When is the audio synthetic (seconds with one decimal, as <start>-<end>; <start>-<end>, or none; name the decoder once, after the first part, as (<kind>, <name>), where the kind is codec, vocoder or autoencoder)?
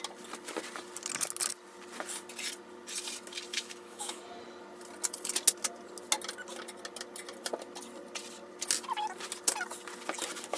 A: 3.5-4.2 (autoencoder, DAC-VAE)